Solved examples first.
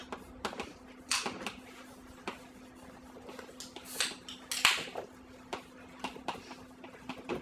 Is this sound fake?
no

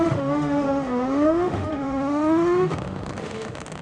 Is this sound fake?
yes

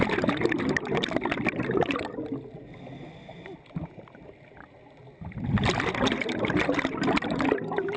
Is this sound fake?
no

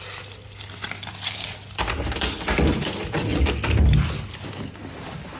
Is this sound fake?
no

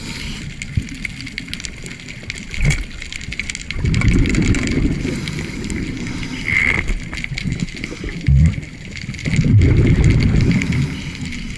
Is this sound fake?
no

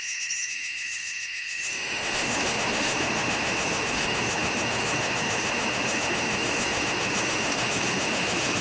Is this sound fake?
yes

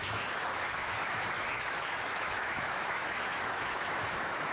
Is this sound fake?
yes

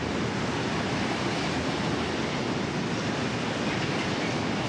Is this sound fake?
no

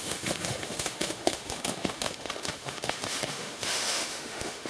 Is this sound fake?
yes